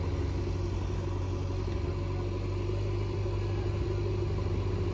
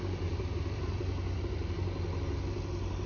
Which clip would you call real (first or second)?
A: first